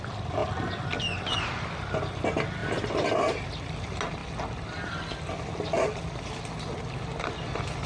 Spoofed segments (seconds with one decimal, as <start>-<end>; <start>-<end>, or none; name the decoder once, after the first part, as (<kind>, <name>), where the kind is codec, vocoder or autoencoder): none